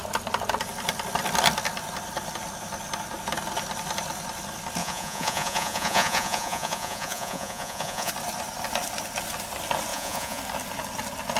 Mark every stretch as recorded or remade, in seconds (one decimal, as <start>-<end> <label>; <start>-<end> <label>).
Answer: 0.0-4.8 recorded; 4.8-8.1 remade; 8.1-9.9 recorded; 9.9-10.4 remade; 10.4-11.4 recorded